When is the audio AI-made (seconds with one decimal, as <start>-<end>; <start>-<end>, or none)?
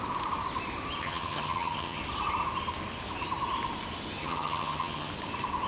1.0-2.0; 4.2-5.1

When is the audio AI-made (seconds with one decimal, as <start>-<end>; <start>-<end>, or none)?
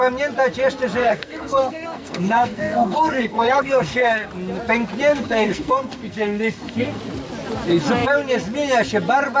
1.0-4.3; 5.1-7.0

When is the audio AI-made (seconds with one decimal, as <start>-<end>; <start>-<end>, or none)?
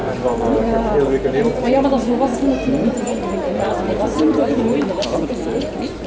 0.0-0.6; 2.3-6.1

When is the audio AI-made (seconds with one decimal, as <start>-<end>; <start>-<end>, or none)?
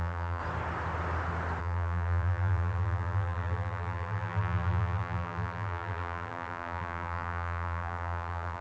0.0-0.4; 1.6-8.6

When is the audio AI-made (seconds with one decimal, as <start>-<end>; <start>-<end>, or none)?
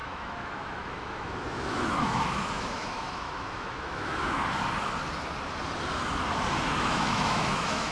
0.0-4.4; 6.8-7.9